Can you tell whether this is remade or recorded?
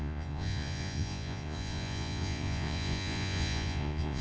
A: remade